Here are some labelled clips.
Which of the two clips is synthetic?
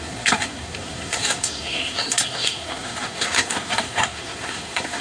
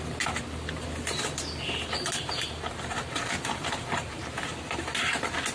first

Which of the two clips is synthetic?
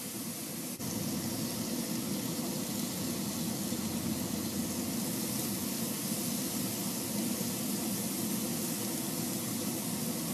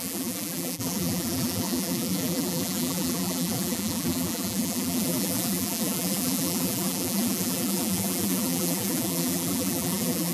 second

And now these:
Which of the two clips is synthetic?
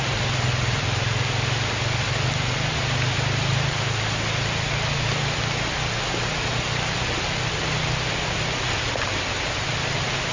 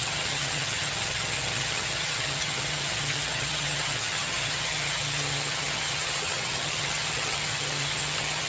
second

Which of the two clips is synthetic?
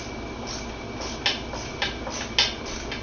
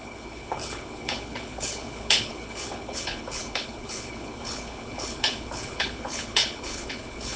second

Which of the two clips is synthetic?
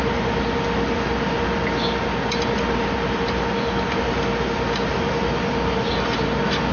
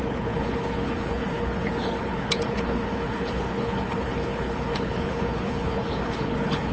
second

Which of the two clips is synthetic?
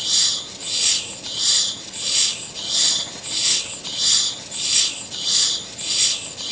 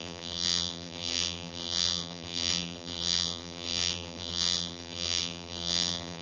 second